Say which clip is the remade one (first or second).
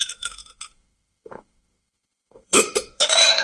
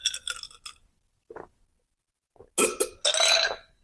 first